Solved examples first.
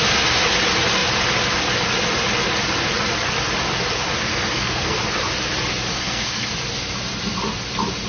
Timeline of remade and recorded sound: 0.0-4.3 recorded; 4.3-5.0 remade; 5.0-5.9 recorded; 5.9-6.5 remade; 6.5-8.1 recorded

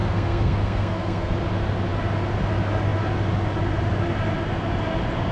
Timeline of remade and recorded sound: 0.0-1.3 remade; 1.3-5.3 recorded

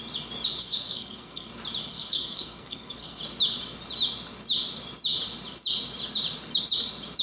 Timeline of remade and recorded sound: 0.0-0.6 recorded; 0.6-1.5 remade; 1.5-1.9 recorded; 1.9-3.2 remade; 3.2-7.2 recorded

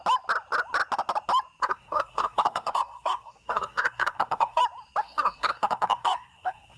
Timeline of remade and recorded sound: 0.0-1.6 recorded; 1.6-4.6 remade; 4.6-5.0 recorded; 5.0-6.8 remade

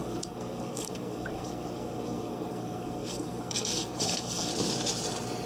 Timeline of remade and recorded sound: 0.0-4.5 remade; 4.5-5.5 recorded